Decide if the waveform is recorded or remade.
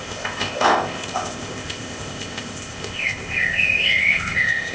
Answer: remade